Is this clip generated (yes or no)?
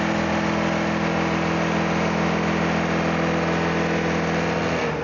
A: no